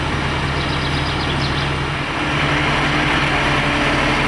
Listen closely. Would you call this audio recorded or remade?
recorded